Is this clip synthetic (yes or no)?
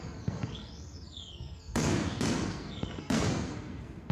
yes